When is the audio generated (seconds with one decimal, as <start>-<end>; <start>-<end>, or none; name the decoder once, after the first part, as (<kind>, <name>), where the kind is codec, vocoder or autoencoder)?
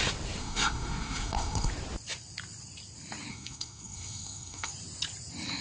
0.4-1.7 (codec, SNAC); 3.3-4.7